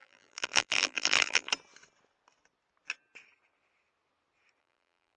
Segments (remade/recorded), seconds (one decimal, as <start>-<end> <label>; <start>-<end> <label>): 0.0-1.5 remade; 1.5-4.6 recorded; 4.6-5.2 remade